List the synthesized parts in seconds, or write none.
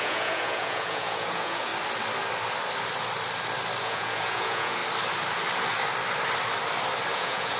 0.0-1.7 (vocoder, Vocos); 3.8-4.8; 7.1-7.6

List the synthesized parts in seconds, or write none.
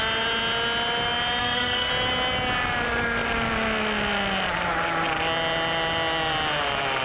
1.4-1.9 (codec, SNAC)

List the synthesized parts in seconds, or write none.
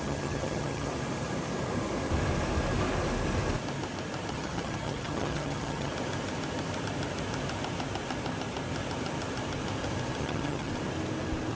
0.0-0.9 (vocoder, HiFi-GAN); 4.3-5.9; 10.2-10.7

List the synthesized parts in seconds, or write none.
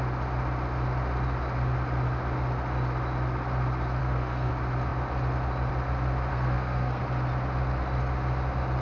4.0-4.5 (codec, SNAC); 6.3-7.0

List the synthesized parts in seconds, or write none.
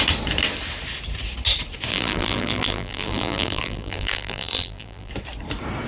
1.9-5.1 (vocoder, BigVGAN v2)